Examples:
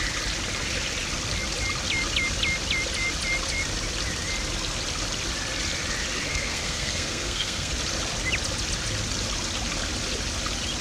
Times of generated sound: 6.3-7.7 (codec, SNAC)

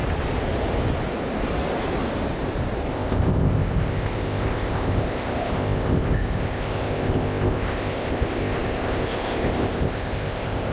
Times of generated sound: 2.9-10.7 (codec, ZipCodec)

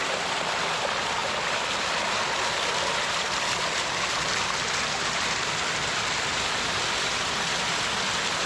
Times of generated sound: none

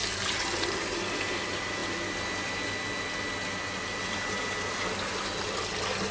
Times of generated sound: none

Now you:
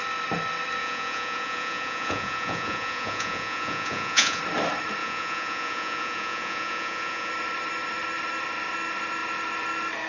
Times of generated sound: 0.8-4.4 (vocoder, Vocos); 5.0-7.3

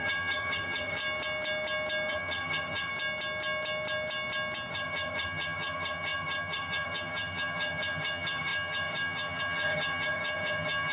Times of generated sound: 0.0-1.0 (vocoder, HiFi-GAN); 2.1-2.9; 4.7-10.9

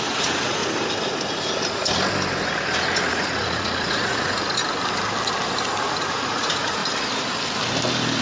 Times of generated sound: 0.0-0.6 (vocoder, Vocos); 3.1-4.6; 5.8-6.8